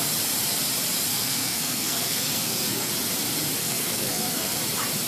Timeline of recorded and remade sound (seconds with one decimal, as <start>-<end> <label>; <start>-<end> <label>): 0.0-1.1 recorded; 1.1-2.9 remade; 2.9-3.6 recorded; 3.6-4.6 remade; 4.6-5.1 recorded